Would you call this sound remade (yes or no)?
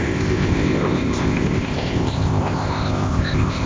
yes